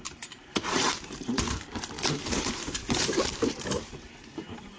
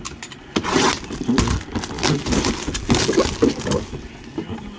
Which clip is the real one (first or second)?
second